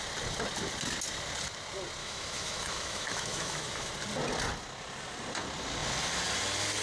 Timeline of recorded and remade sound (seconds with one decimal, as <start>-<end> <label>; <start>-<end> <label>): 0.0-2.0 recorded; 2.0-3.9 remade; 3.9-6.8 recorded